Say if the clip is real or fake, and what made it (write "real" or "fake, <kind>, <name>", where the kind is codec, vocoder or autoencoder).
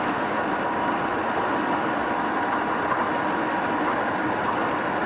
real